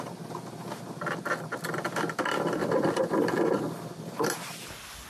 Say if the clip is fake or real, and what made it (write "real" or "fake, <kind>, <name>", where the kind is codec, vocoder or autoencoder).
real